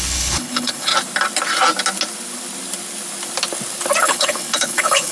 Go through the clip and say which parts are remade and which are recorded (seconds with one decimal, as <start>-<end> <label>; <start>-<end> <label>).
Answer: 0.0-0.9 remade; 0.9-4.0 recorded; 4.0-5.1 remade